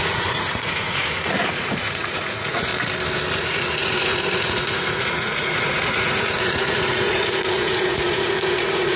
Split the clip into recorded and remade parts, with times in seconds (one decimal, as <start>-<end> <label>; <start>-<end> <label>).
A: 0.0-2.7 remade; 2.7-3.3 recorded; 3.3-9.0 remade